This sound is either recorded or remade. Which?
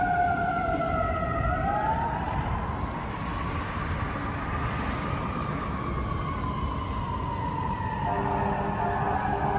recorded